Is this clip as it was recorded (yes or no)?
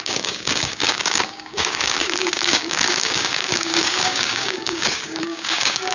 no